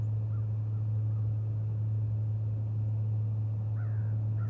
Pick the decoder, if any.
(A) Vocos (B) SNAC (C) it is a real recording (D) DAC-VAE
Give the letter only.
C